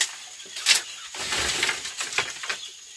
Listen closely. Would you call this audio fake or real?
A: real